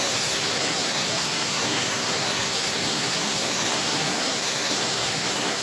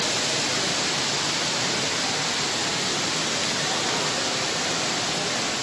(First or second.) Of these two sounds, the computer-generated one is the first